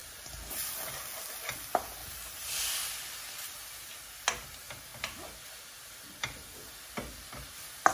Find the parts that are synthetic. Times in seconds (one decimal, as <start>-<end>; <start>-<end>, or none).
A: 0.0-0.5; 2.0-2.7